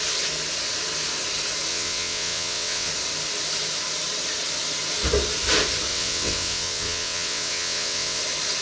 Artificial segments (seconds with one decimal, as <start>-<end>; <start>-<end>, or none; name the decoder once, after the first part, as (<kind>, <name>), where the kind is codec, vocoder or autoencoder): 1.7-2.9 (vocoder, WaveNeXt); 5.9-8.2